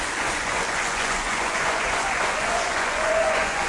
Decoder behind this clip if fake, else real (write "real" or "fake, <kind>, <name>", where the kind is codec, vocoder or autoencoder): fake, vocoder, Vocos